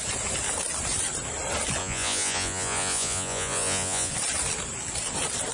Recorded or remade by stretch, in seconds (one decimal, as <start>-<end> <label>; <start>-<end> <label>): 0.0-1.8 recorded; 1.8-4.1 remade; 4.1-5.5 recorded